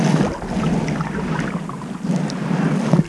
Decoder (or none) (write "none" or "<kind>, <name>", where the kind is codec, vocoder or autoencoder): none